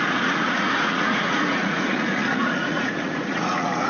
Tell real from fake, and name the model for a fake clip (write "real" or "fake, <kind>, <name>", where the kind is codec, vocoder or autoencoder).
fake, vocoder, Vocos